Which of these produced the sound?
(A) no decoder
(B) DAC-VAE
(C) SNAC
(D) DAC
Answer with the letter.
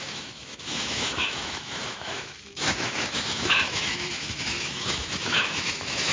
B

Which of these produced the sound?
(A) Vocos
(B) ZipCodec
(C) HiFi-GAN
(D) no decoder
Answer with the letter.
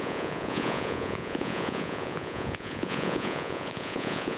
A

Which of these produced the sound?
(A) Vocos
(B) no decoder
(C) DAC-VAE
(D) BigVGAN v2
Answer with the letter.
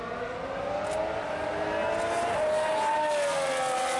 B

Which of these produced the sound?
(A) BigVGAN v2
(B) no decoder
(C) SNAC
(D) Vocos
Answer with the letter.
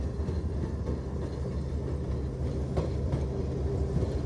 B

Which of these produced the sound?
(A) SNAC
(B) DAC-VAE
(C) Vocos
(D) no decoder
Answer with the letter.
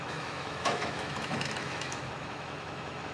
B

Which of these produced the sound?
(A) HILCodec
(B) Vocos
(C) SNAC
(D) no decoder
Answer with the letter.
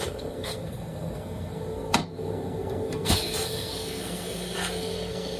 C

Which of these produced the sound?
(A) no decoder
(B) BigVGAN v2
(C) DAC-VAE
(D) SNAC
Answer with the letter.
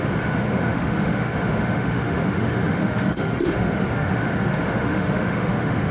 C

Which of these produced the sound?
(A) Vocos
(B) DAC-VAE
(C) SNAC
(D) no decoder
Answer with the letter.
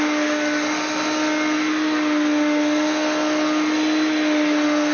D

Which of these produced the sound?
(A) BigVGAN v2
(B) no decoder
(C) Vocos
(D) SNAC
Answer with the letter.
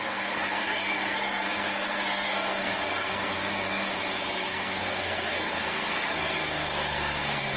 D